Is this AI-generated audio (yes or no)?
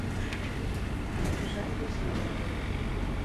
no